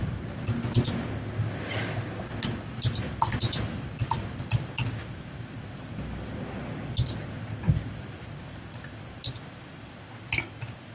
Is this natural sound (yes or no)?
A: yes